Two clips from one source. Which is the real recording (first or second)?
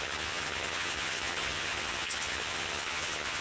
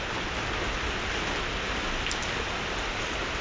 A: second